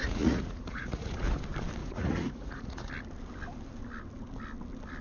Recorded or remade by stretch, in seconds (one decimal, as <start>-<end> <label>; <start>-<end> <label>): 0.0-1.4 remade; 1.4-1.8 recorded; 1.8-2.9 remade; 2.9-5.0 recorded